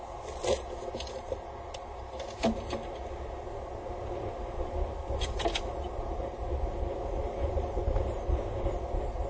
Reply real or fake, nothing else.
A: real